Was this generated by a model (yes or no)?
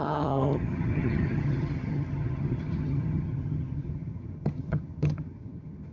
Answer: yes